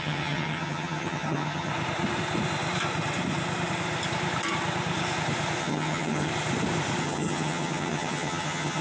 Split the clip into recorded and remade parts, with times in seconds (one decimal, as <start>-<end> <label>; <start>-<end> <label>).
0.0-1.7 remade; 1.7-5.6 recorded; 5.6-6.3 remade; 6.3-7.0 recorded; 7.0-8.8 remade